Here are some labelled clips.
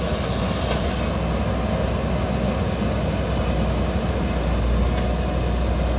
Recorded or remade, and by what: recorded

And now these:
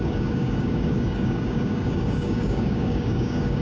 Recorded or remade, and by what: remade, codec, DAC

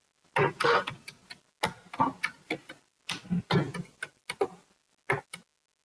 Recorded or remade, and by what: recorded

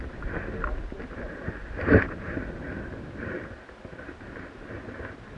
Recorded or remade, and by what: recorded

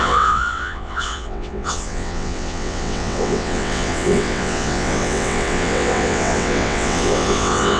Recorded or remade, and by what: remade, vocoder, WaveNeXt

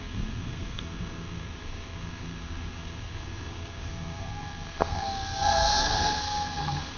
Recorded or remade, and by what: remade, codec, SNAC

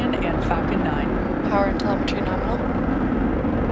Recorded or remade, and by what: recorded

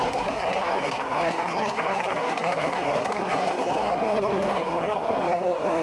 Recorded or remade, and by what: remade, codec, SNAC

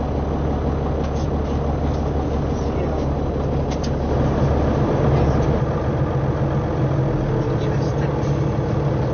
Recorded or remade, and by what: recorded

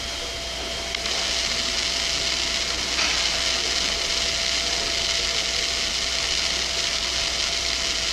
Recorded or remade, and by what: recorded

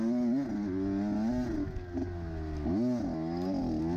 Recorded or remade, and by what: recorded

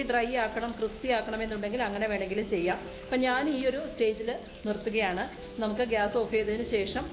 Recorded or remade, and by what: remade, autoencoder, DAC-VAE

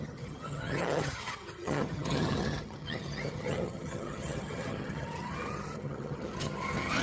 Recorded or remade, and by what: remade, vocoder, HiFi-GAN